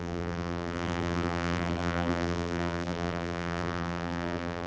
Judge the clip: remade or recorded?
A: remade